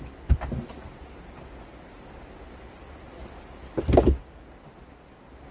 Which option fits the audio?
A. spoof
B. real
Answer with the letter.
B